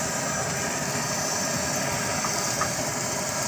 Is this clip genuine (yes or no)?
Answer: yes